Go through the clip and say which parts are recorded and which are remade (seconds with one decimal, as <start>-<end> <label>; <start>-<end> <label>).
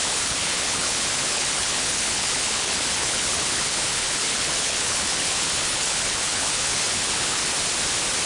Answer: 0.0-7.4 remade; 7.4-8.3 recorded